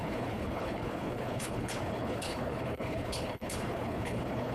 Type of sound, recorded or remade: remade